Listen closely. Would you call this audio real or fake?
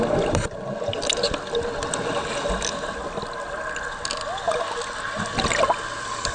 real